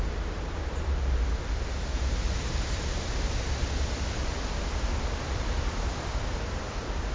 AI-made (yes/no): no